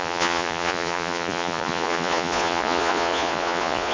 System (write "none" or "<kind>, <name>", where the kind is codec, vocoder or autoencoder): vocoder, Vocos